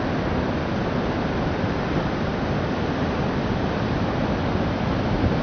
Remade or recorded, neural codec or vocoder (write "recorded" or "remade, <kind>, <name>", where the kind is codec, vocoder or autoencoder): recorded